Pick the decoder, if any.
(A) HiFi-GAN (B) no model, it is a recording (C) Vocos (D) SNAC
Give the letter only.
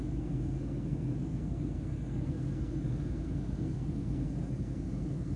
D